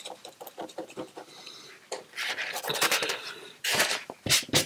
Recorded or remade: remade